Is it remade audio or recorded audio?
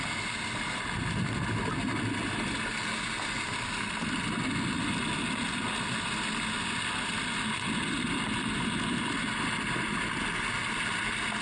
recorded